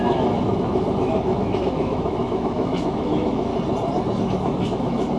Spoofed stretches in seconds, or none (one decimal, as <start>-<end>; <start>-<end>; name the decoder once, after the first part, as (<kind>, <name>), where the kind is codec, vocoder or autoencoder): 0.0-3.5 (autoencoder, DAC-VAE); 4.2-5.2